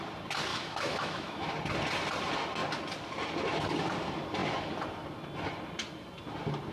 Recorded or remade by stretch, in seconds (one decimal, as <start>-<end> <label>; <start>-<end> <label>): 0.0-0.5 recorded; 0.5-1.5 remade; 1.5-6.7 recorded